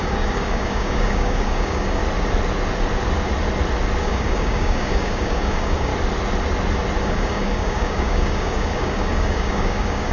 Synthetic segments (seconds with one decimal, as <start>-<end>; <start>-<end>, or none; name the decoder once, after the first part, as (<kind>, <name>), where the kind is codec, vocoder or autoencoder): 0.0-2.0 (codec, DAC); 4.0-5.9; 7.0-10.1